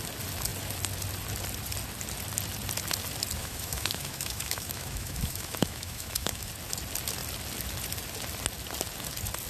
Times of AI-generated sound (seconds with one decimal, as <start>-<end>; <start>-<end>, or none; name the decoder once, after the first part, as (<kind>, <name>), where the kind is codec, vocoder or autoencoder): 3.4-6.5 (autoencoder, DAC-VAE)